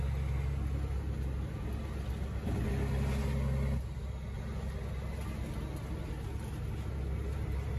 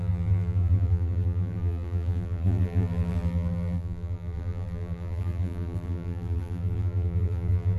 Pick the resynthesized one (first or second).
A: second